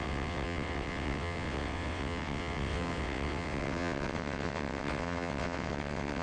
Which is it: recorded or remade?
remade